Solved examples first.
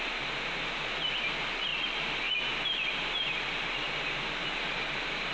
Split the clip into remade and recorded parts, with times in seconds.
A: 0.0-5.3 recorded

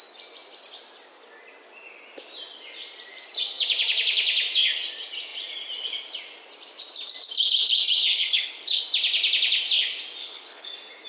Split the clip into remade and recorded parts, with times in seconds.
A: 0.0-8.1 recorded; 8.1-8.8 remade; 8.8-10.2 recorded; 10.2-10.7 remade; 10.7-11.1 recorded

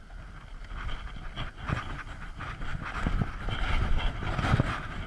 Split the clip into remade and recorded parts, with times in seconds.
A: 0.0-5.1 recorded